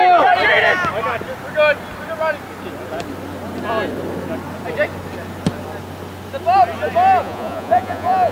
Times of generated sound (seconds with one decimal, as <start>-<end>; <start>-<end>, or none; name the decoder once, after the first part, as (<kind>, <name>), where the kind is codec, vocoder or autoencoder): 7.2-8.3 (vocoder, Vocos)